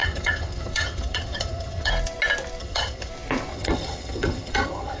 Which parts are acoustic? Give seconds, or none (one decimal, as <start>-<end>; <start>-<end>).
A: 1.9-2.6; 3.1-3.5